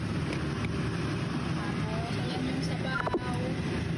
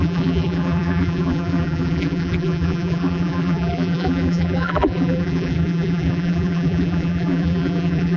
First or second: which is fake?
second